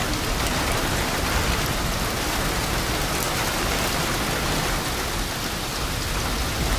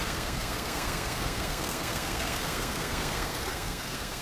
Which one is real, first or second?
first